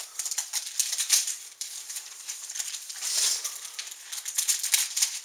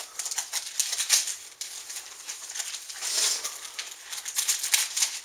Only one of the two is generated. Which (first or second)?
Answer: first